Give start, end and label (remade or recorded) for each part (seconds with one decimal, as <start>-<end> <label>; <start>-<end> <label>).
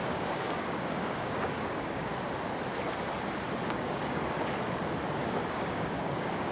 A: 0.0-2.1 remade; 2.1-3.7 recorded; 3.7-4.2 remade; 4.2-5.3 recorded; 5.3-6.5 remade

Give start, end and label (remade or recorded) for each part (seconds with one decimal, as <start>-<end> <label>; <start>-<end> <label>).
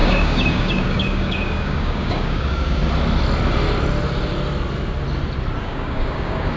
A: 0.0-2.8 remade; 2.8-5.6 recorded; 5.6-6.6 remade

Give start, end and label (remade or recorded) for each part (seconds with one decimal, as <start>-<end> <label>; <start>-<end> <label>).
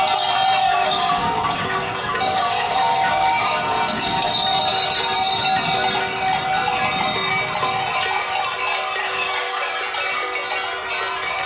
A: 0.0-0.6 recorded; 0.6-4.3 remade; 4.3-9.0 recorded; 9.0-9.7 remade; 9.7-11.5 recorded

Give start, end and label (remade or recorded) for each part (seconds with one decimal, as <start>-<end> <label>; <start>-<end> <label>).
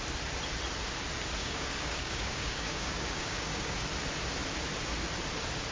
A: 0.0-1.4 recorded; 1.4-3.8 remade; 3.8-5.7 recorded